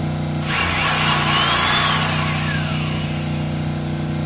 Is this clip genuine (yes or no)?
yes